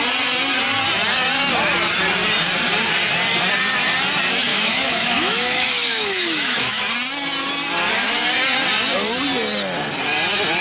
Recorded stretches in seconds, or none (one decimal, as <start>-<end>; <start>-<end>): 0.0-4.5; 6.8-10.6